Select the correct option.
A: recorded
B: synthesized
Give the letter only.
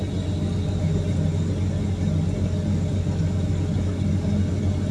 A